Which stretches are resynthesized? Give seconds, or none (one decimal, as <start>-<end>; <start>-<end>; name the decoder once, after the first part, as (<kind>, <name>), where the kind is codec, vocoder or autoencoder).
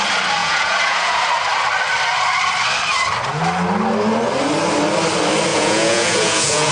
0.4-1.2 (vocoder, Vocos); 5.5-6.7